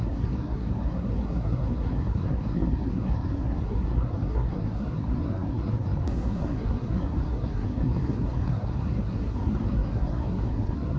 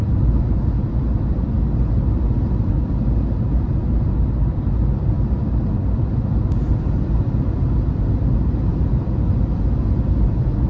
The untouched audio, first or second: second